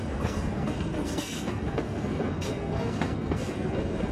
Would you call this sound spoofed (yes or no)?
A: yes